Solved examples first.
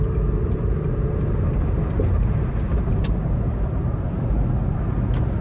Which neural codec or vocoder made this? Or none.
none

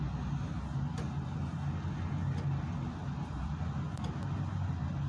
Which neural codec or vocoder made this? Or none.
none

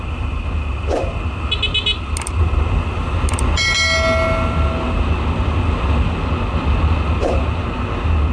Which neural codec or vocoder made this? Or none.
none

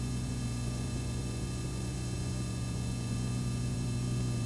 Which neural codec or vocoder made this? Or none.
vocoder, Vocos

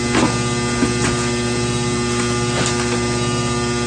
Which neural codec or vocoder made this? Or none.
none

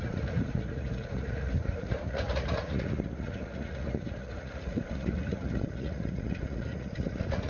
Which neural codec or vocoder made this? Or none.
vocoder, Vocos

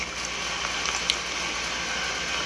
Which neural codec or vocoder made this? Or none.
none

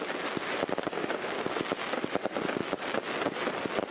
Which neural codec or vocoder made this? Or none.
none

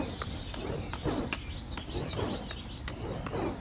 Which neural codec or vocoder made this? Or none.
none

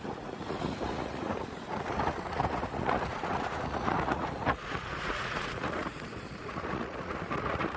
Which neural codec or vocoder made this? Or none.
vocoder, Vocos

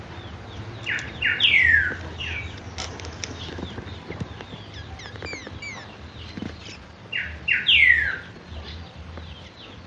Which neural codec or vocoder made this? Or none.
none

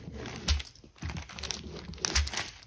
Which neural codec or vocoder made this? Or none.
none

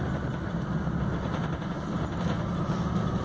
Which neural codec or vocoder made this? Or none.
none